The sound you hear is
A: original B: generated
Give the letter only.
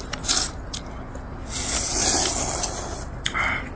A